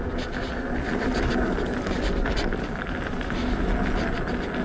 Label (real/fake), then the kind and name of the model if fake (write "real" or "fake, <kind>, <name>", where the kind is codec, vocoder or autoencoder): real